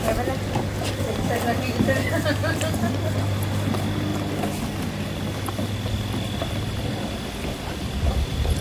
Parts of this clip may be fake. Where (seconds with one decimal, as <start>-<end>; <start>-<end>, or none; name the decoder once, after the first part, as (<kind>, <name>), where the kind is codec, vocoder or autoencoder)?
none